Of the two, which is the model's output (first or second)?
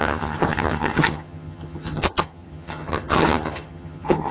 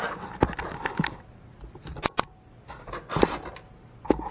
first